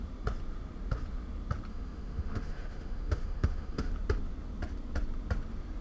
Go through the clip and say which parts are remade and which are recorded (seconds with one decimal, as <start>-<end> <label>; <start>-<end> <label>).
0.0-1.7 recorded; 1.7-3.9 remade; 3.9-5.8 recorded